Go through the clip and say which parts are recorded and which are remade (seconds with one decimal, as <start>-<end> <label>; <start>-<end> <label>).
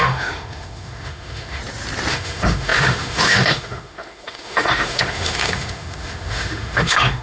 0.0-1.6 remade; 1.6-2.1 recorded; 2.1-7.2 remade